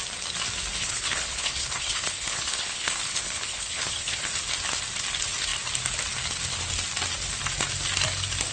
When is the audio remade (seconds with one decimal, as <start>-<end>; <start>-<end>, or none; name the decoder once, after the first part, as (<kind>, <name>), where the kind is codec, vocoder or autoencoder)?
0.7-4.3 (codec, HILCodec)